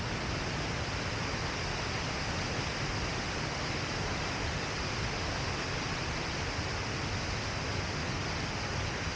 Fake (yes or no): no